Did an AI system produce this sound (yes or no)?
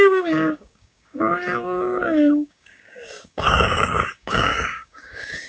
yes